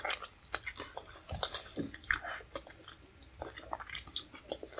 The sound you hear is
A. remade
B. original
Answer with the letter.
B